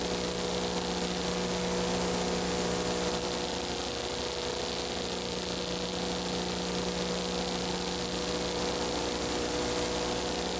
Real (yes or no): yes